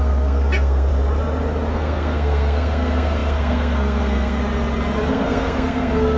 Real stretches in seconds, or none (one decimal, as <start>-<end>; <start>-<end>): 0.9-1.7; 4.4-5.1